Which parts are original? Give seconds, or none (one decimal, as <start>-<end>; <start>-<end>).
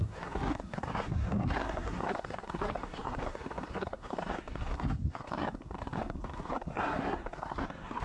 none